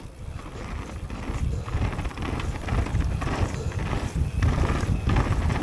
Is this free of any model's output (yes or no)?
yes